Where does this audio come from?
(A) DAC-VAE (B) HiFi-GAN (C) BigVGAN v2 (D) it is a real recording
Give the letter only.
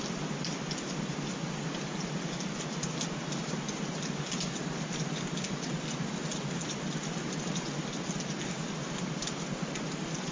D